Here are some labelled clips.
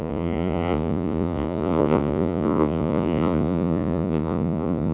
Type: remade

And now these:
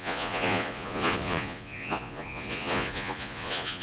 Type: remade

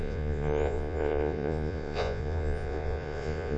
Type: remade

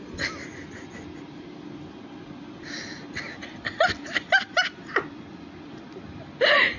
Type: recorded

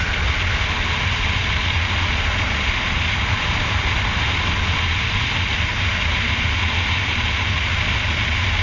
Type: recorded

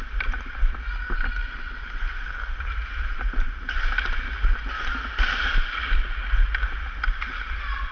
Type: recorded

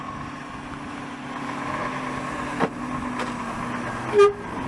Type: recorded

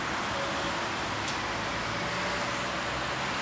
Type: recorded